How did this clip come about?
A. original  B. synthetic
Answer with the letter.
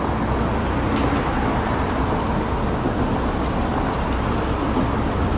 A